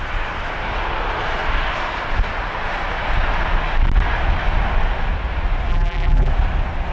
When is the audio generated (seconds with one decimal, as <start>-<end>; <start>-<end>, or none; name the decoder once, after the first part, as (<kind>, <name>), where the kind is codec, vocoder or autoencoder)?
5.7-6.3 (vocoder, BigVGAN v2)